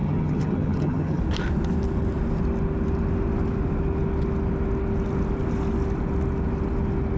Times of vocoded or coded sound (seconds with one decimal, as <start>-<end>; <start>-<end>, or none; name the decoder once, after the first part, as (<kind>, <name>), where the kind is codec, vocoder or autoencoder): 0.0-1.2 (vocoder, HiFi-GAN)